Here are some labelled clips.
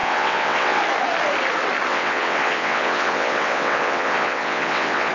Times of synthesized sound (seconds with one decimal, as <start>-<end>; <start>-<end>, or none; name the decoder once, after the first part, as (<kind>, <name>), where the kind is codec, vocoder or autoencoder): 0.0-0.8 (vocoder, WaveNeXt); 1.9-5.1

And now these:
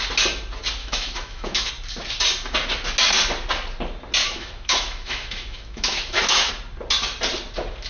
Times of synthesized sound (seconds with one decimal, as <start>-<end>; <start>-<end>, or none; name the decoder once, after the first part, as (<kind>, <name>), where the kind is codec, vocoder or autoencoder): 0.8-1.7 (autoencoder, DAC-VAE); 4.2-6.5

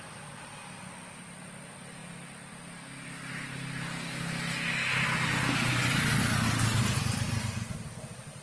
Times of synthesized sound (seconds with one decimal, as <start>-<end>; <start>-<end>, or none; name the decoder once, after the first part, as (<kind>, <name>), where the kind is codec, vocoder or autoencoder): none